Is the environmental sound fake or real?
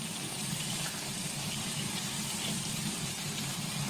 fake